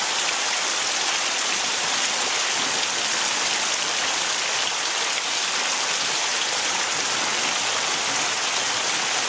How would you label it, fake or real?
real